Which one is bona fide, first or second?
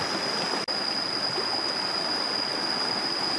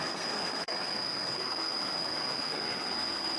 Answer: first